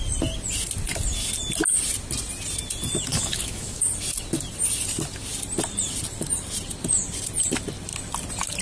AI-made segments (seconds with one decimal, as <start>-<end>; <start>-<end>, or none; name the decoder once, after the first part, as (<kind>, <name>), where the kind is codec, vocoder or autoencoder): 3.1-3.8 (autoencoder, DAC-VAE)